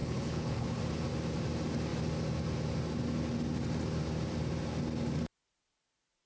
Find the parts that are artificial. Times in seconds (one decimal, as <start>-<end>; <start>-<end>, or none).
0.0-0.8